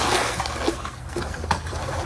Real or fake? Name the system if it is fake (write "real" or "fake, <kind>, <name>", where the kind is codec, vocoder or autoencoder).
fake, codec, SNAC